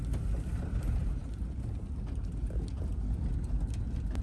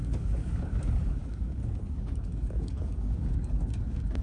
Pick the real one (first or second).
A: first